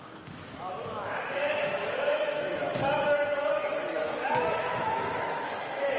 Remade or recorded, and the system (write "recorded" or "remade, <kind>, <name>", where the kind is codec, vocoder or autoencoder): remade, autoencoder, DAC-VAE